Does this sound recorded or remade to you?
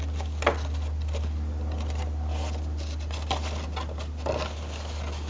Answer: recorded